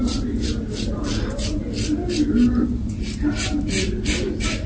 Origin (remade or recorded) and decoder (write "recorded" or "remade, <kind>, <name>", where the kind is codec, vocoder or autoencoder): recorded